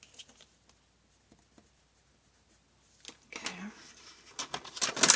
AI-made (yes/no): no